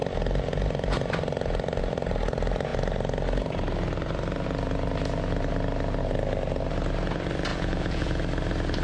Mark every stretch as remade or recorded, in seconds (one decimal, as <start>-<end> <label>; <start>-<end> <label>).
0.0-7.5 recorded; 7.5-8.2 remade; 8.2-8.8 recorded